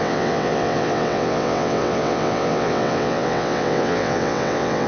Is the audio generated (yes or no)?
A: yes